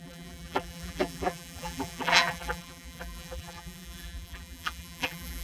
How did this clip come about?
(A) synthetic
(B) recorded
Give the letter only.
A